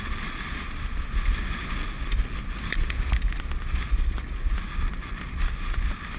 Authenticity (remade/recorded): recorded